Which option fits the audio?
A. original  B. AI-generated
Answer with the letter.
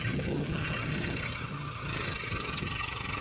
B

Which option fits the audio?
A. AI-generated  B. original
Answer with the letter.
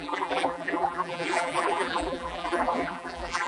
A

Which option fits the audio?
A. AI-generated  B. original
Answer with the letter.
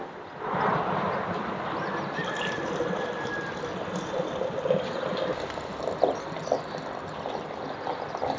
B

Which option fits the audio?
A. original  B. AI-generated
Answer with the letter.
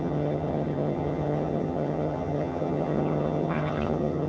B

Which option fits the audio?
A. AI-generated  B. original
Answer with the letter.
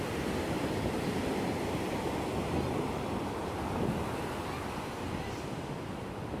B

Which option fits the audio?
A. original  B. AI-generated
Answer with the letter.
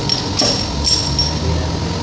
A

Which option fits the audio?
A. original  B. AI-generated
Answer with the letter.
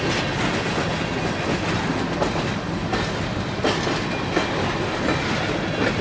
A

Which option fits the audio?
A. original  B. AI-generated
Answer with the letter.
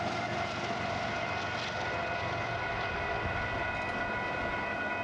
A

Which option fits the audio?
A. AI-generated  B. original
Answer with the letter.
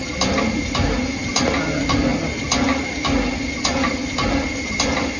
B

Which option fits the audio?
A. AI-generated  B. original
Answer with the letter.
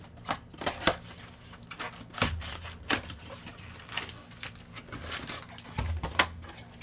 B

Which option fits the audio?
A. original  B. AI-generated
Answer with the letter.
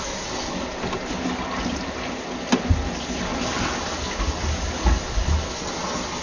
A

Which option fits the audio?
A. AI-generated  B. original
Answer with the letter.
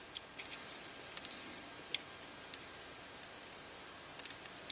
B